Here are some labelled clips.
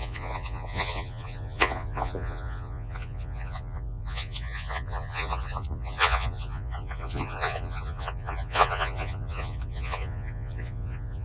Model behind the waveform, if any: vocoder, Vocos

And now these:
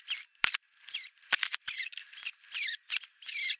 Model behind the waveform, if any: none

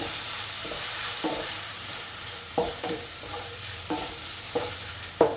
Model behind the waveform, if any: vocoder, BigVGAN v2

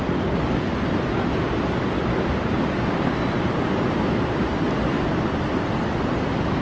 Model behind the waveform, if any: vocoder, BigVGAN v2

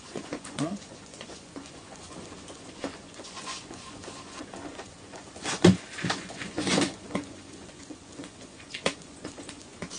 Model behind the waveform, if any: vocoder, Vocos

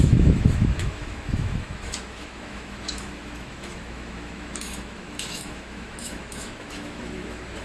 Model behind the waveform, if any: autoencoder, DAC-VAE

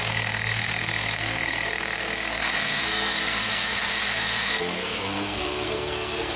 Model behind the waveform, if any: codec, SNAC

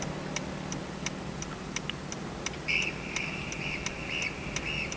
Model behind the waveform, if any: none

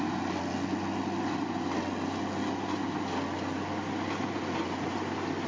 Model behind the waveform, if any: none